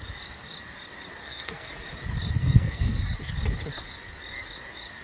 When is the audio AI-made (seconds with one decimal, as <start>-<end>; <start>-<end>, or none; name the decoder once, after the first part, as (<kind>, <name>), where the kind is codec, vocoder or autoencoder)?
1.2-1.7 (codec, SNAC); 2.4-3.0